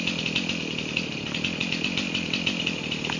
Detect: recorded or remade recorded